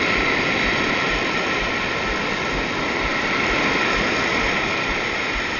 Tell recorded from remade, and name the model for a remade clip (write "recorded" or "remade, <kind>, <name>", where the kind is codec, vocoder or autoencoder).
recorded